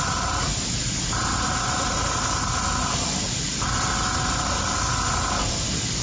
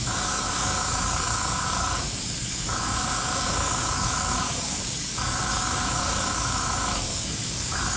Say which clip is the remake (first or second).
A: second